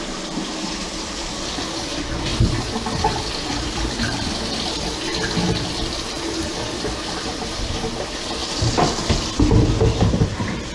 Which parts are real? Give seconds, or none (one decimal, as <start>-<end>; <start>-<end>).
2.3-3.3; 5.1-5.7; 8.4-10.2